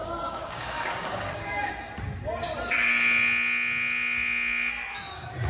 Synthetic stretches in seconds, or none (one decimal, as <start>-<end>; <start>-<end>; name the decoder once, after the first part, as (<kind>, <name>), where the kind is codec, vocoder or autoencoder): 0.0-1.7 (codec, DAC)